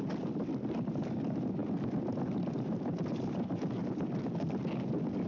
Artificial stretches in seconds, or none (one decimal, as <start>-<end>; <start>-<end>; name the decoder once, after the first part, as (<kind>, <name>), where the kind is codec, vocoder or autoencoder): none